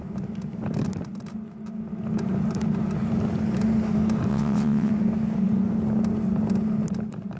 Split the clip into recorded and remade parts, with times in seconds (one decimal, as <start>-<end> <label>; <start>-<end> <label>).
0.0-4.3 recorded; 4.3-4.9 remade; 4.9-7.4 recorded